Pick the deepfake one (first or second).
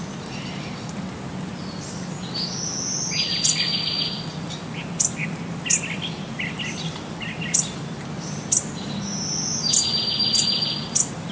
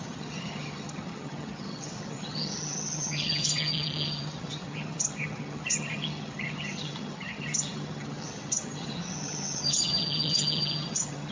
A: second